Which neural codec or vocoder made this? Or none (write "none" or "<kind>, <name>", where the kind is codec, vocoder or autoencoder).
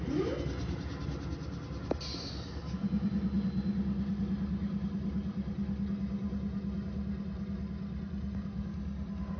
none